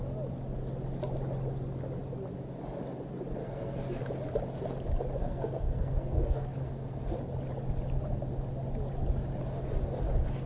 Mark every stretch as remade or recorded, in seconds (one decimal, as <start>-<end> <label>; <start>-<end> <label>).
0.0-3.4 recorded; 3.4-4.0 remade; 4.0-5.2 recorded; 5.2-7.2 remade; 7.2-10.5 recorded

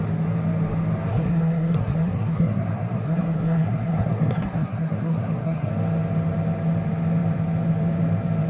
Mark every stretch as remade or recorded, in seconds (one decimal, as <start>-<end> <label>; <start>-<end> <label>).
0.0-1.1 recorded; 1.1-5.7 remade; 5.7-8.5 recorded

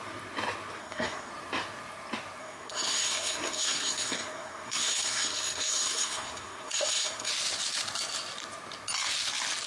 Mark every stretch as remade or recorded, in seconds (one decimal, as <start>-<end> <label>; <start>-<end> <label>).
0.0-0.8 recorded; 0.8-1.3 remade; 1.3-2.4 recorded; 2.4-7.3 remade; 7.3-9.7 recorded

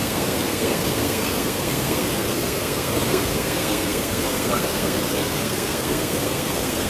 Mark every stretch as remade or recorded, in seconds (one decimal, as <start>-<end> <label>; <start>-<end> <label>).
0.0-6.9 remade

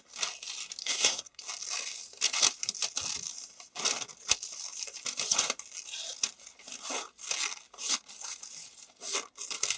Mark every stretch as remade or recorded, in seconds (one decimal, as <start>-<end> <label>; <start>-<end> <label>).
0.0-0.8 recorded; 0.8-1.4 remade; 1.4-9.8 recorded

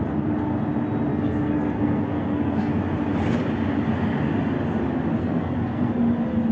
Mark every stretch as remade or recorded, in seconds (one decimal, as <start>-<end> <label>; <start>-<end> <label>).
0.0-1.1 recorded; 1.1-2.7 remade; 2.7-5.2 recorded; 5.2-5.9 remade; 5.9-6.5 recorded

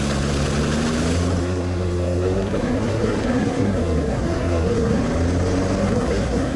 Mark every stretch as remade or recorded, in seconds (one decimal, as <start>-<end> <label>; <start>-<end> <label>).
0.0-1.4 recorded; 1.4-5.0 remade; 5.0-5.8 recorded; 5.8-6.6 remade

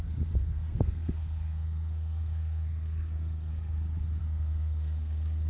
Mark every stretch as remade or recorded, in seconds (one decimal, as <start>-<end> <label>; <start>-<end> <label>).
0.0-0.4 recorded; 0.4-3.7 remade; 3.7-4.2 recorded; 4.2-5.5 remade